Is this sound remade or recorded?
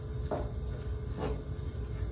recorded